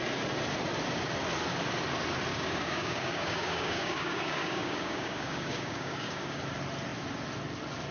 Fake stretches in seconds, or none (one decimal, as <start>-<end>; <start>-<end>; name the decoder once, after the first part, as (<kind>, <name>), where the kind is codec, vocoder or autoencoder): 2.3-6.4 (codec, DAC)